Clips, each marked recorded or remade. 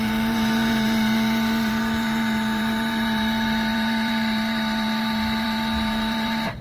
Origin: remade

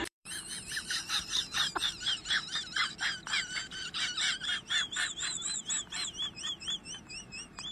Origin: remade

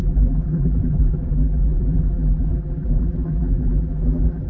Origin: remade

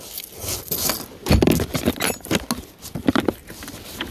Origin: recorded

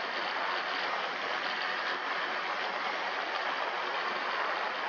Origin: recorded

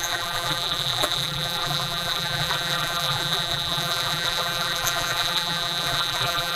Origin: remade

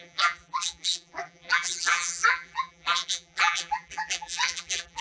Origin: remade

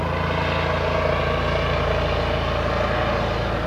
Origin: recorded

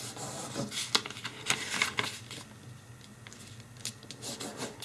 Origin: recorded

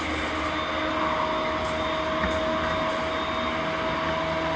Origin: recorded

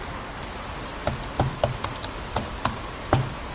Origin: recorded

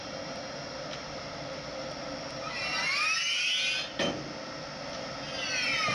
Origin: recorded